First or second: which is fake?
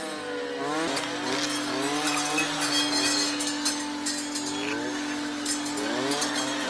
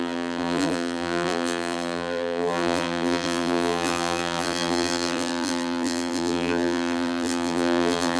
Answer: second